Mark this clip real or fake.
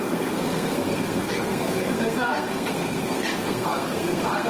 fake